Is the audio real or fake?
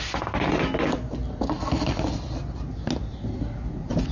real